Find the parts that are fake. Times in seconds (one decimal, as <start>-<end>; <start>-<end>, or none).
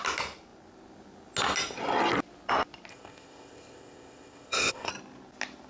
2.9-4.9